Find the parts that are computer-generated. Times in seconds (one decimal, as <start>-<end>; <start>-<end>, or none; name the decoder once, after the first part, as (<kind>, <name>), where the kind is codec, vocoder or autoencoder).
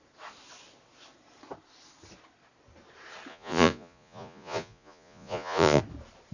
3.3-5.8 (vocoder, Vocos)